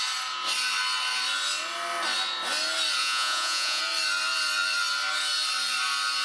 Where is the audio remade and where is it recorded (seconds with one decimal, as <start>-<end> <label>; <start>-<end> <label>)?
0.0-3.0 recorded; 3.0-3.8 remade; 3.8-6.2 recorded